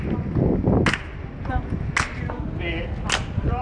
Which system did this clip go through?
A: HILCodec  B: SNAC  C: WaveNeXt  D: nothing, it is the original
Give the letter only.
D